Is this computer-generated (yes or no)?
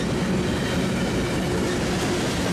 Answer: no